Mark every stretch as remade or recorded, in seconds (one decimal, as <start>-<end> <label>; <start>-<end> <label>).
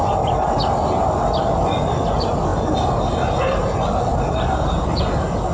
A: 0.0-5.5 recorded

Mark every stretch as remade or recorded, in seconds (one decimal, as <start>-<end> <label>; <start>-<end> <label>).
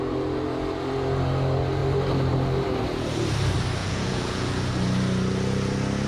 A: 0.0-3.8 recorded; 3.8-4.7 remade; 4.7-6.1 recorded